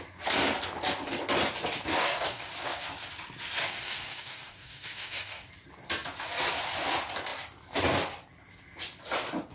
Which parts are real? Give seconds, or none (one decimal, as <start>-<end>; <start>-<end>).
0.0-2.0; 2.5-3.6; 5.5-9.5